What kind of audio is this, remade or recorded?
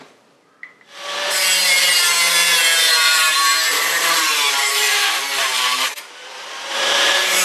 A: remade